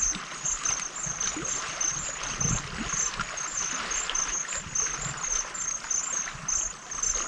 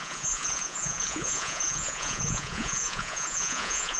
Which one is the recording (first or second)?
first